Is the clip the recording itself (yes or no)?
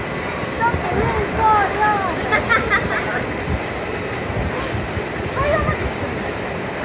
yes